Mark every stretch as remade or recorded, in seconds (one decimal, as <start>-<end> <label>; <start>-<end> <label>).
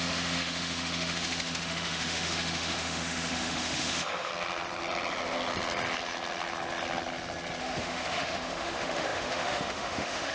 0.0-4.3 remade; 4.3-7.6 recorded; 7.6-10.3 remade